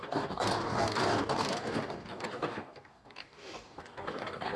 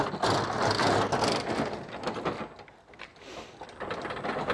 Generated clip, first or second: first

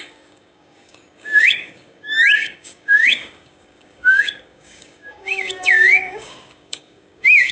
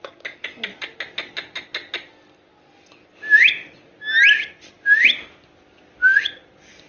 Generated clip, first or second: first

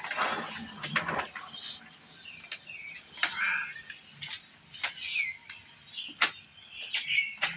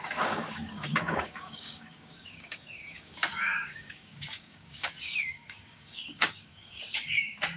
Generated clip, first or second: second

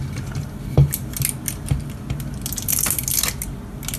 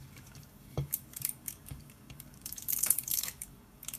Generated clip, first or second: second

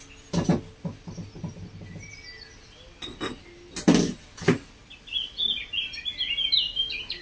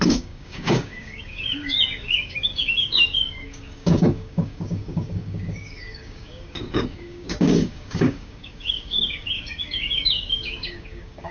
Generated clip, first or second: second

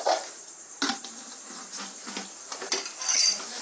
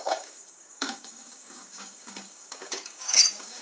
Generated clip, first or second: second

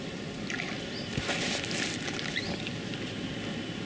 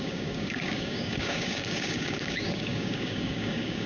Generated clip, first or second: second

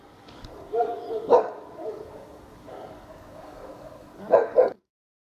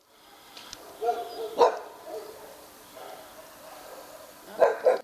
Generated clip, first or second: first